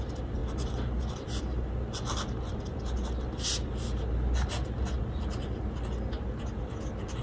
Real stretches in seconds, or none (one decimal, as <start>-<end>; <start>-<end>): 0.0-7.2